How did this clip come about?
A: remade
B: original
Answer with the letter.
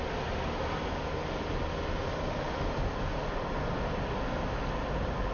B